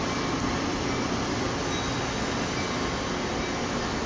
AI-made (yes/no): no